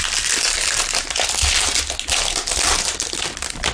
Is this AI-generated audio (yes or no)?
no